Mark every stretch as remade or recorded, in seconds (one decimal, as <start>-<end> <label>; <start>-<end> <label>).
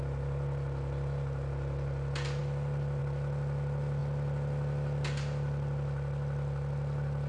0.0-7.3 recorded